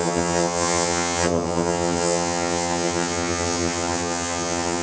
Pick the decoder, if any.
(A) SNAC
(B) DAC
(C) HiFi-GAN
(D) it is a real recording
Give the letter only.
C